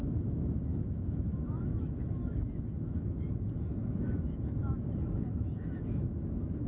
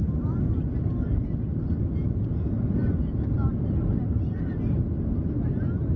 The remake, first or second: first